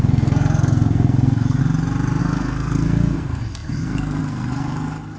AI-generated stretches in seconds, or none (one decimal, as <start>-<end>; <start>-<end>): 0.0-1.6; 2.2-5.2